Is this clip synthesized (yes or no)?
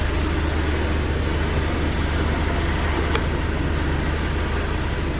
no